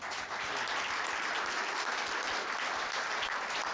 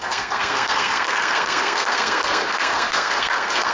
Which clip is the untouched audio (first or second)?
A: first